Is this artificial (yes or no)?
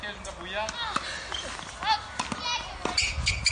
no